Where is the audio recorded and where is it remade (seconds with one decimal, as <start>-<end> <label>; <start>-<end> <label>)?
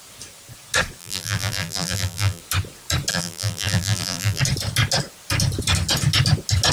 0.0-1.0 recorded; 1.0-2.4 remade; 2.4-3.1 recorded; 3.1-4.4 remade; 4.4-6.7 recorded